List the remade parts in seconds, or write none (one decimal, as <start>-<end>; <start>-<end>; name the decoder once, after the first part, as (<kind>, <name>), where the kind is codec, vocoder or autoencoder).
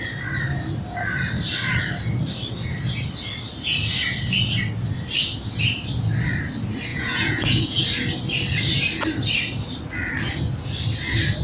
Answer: 6.9-7.8 (vocoder, Vocos)